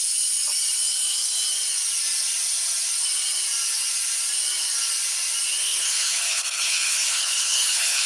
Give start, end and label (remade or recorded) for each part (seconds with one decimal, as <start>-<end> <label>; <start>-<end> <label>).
0.0-5.6 recorded; 5.6-8.1 remade